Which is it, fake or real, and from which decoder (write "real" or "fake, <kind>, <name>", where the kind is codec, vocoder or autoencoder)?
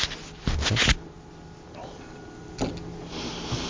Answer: real